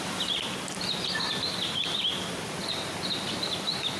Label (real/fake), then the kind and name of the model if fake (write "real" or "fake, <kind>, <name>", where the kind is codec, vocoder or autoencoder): real